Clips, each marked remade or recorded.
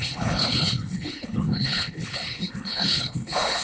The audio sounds remade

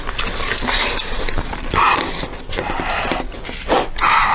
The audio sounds recorded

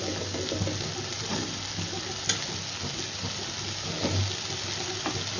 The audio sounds recorded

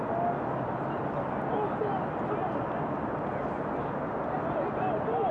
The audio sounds recorded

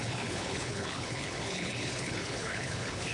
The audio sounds remade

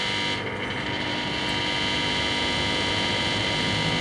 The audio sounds recorded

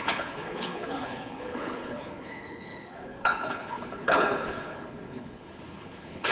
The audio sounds remade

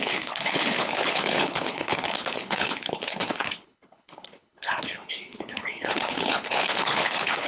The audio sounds remade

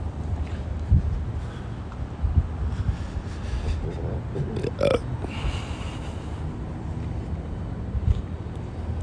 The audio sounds recorded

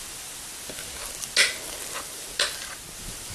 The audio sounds recorded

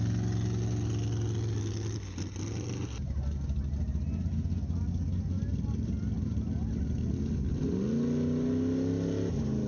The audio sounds recorded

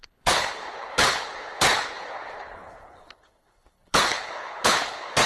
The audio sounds remade